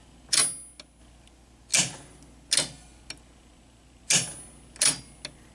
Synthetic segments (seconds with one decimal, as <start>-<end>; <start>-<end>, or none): none